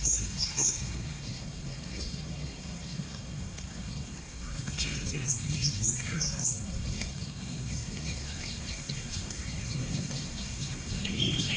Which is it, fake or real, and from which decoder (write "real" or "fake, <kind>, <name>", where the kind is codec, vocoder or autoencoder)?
fake, codec, SNAC